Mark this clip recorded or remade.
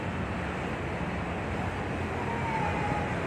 recorded